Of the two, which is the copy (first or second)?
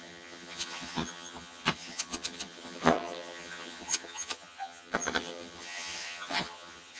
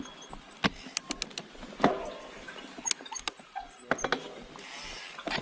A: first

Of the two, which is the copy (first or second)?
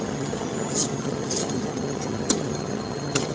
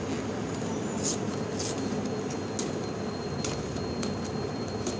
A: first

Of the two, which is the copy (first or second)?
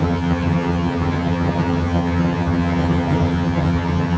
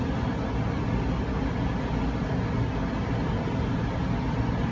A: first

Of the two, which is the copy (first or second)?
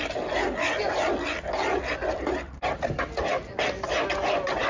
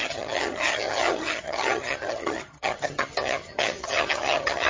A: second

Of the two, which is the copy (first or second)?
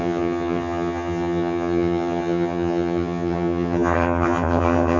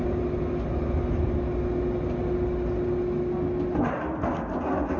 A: first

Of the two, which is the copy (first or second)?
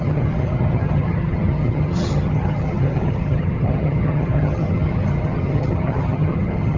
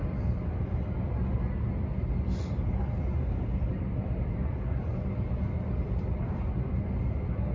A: first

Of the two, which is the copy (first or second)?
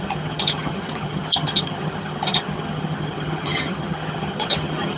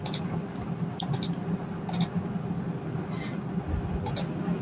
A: first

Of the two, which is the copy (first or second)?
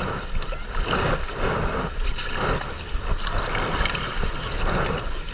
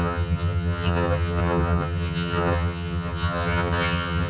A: second